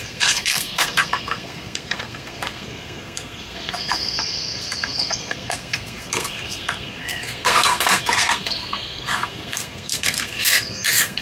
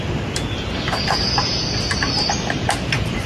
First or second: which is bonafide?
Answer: second